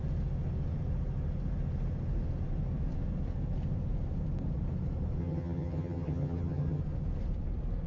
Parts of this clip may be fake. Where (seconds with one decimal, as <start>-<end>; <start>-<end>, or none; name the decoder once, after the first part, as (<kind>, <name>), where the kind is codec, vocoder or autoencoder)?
5.2-6.8 (vocoder, HiFi-GAN)